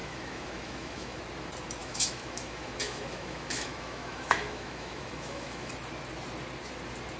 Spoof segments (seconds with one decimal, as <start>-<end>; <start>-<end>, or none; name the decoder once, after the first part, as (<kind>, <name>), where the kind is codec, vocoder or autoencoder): 0.0-1.2 (autoencoder, DAC-VAE); 1.8-5.7